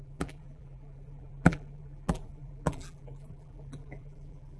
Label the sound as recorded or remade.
remade